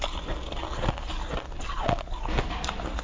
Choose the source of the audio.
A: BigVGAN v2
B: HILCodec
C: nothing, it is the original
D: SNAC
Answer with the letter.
C